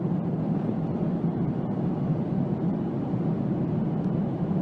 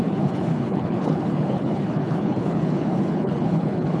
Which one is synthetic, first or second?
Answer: second